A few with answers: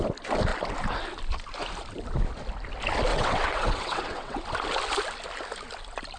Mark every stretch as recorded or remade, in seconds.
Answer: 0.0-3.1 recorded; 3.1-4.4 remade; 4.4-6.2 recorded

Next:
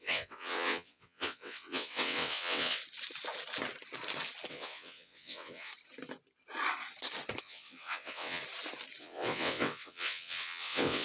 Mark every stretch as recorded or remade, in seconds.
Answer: 0.0-2.8 remade; 2.8-4.5 recorded; 4.5-5.7 remade; 5.7-7.4 recorded; 7.4-8.4 remade; 8.4-9.0 recorded; 9.0-11.0 remade

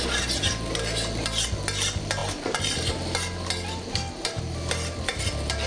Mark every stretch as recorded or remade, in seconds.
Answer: 0.0-5.7 recorded

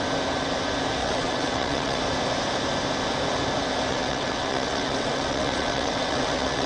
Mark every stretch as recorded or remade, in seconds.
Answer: 0.0-1.0 recorded; 1.0-2.0 remade; 2.0-3.9 recorded; 3.9-6.7 remade

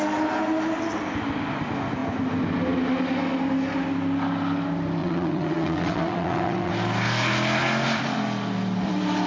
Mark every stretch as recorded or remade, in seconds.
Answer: 0.0-5.0 recorded; 5.0-6.7 remade; 6.7-9.3 recorded